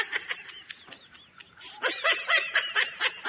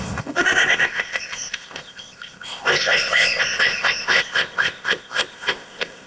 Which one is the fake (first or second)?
second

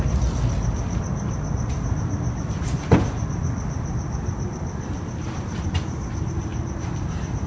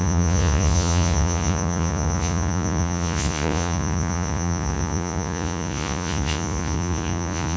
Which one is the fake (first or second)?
second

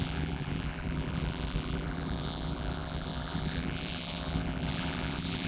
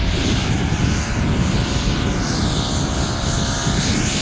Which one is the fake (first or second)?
first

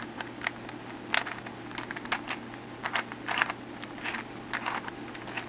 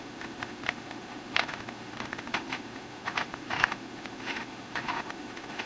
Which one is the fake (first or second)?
second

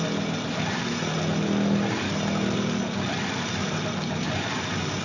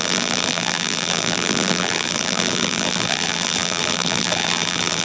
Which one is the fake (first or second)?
second